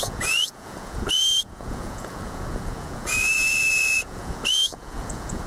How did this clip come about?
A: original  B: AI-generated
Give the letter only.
B